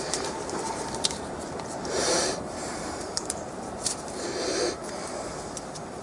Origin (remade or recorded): remade